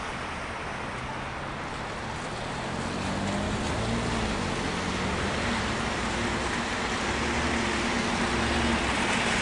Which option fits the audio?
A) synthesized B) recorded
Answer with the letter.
B